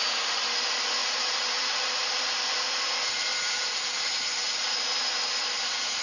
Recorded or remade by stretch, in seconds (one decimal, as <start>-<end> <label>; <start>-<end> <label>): 0.0-1.0 recorded; 1.0-2.3 remade; 2.3-3.3 recorded; 3.3-4.8 remade; 4.8-6.0 recorded